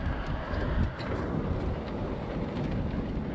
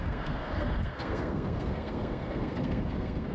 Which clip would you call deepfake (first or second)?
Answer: second